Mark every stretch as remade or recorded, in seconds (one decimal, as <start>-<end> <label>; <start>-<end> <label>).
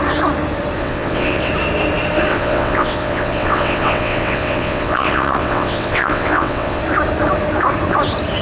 0.0-0.8 recorded; 0.8-1.5 remade; 1.5-2.3 recorded; 2.3-6.8 remade; 6.8-8.4 recorded